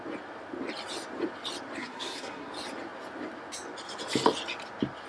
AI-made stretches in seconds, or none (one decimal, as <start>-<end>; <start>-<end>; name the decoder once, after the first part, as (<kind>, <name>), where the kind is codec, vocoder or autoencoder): 1.8-2.5 (codec, SNAC)